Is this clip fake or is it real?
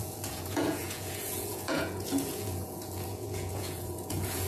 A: fake